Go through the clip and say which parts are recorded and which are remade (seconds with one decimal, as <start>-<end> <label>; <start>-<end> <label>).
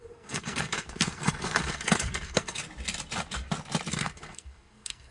0.0-2.6 remade; 2.6-3.9 recorded; 3.9-5.1 remade